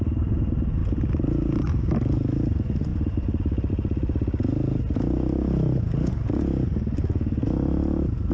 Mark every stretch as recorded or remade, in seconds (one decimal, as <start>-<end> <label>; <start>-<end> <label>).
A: 0.0-8.3 recorded